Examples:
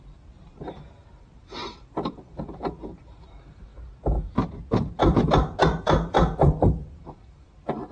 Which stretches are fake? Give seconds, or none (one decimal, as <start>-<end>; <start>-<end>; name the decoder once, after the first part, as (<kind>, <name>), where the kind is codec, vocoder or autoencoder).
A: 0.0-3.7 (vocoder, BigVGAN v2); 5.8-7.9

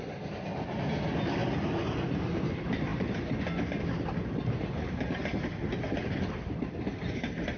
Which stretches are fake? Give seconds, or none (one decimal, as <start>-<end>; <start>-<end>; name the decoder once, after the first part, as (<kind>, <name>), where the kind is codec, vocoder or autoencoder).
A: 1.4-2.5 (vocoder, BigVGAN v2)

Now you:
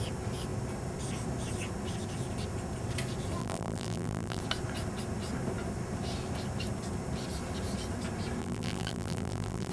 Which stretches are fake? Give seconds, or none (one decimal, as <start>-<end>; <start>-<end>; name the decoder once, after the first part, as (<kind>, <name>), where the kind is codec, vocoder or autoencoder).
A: 3.4-4.4 (vocoder, BigVGAN v2); 8.4-9.7

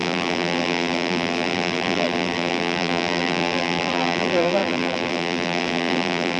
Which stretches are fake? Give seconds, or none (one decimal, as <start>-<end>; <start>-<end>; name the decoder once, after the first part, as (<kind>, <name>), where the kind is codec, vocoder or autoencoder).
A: 0.0-6.4 (vocoder, BigVGAN v2)

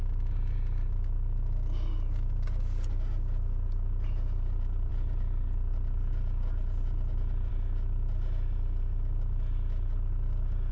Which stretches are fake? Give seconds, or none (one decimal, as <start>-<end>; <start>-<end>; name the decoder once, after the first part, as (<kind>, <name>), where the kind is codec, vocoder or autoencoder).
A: none

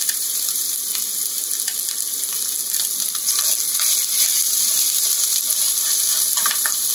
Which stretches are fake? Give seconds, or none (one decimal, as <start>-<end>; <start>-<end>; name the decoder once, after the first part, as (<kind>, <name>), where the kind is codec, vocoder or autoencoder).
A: 0.0-0.8 (vocoder, BigVGAN v2); 4.0-6.9

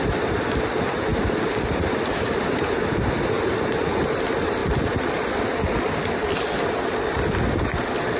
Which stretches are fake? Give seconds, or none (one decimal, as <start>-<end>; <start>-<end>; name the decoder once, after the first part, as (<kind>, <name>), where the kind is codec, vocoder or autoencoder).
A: 1.1-2.1 (vocoder, BigVGAN v2); 4.6-5.5; 6.2-8.2